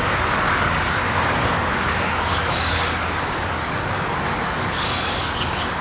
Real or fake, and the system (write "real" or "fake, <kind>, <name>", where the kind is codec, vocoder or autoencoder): fake, codec, DAC